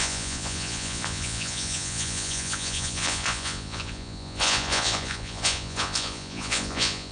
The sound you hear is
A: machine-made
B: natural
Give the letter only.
A